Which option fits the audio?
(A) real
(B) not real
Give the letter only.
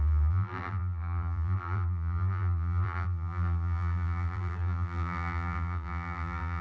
B